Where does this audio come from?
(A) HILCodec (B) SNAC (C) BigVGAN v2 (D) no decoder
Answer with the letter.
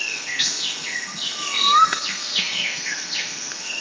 B